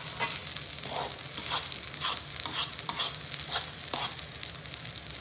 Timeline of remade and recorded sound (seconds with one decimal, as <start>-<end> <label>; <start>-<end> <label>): 0.0-5.2 recorded